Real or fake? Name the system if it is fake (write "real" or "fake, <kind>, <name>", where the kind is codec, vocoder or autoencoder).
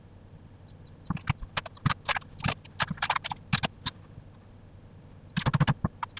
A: real